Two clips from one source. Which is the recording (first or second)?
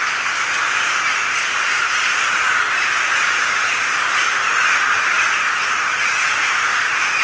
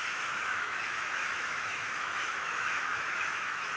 first